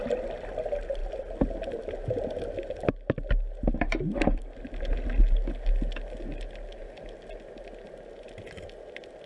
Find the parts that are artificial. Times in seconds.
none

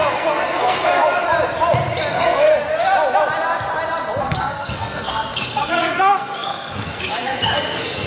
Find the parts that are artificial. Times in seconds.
0.0-1.2 (codec, SNAC); 2.1-2.5; 4.2-8.1

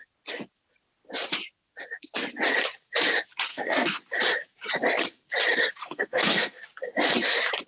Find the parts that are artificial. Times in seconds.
3.5-4.0 (codec, SNAC); 5.8-6.6

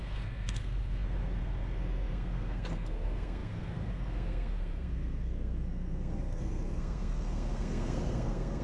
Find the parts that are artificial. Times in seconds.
0.0-8.6 (codec, SNAC)

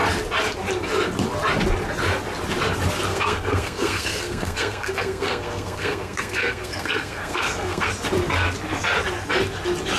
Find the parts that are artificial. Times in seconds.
3.1-7.9 (codec, SNAC)

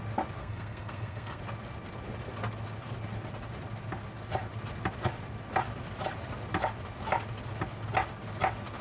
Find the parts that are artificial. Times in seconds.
0.4-1.4 (codec, SNAC)

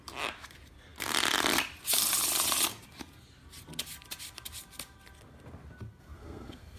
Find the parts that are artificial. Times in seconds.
6.0-6.8 (codec, SNAC)